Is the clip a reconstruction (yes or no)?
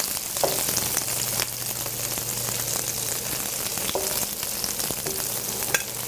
no